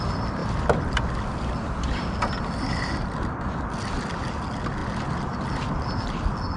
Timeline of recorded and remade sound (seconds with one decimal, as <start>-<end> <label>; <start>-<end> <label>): 0.0-6.6 recorded